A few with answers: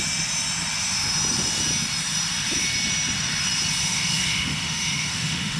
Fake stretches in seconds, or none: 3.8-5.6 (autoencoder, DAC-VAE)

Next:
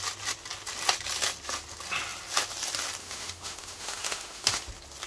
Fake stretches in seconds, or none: 3.0-4.6 (autoencoder, DAC-VAE)

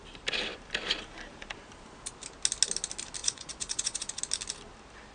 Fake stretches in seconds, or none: 3.2-4.2 (vocoder, Vocos)

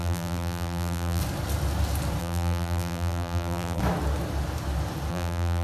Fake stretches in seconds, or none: 0.0-1.2 (vocoder, BigVGAN v2); 2.2-3.8; 5.1-5.6

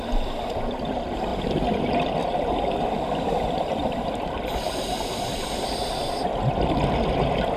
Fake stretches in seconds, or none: 1.3-5.9 (vocoder, BigVGAN v2)

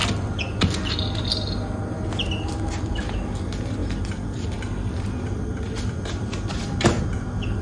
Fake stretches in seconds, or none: 3.8-7.0 (vocoder, BigVGAN v2)